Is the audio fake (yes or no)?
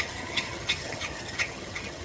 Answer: yes